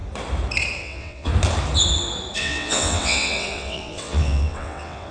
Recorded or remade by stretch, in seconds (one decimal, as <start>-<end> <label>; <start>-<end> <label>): 0.0-0.8 recorded; 0.8-1.3 remade; 1.3-2.4 recorded; 2.4-5.1 remade